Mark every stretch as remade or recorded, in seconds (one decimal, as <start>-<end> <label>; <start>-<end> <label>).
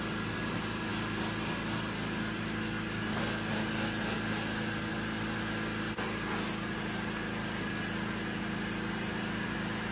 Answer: 0.0-9.9 recorded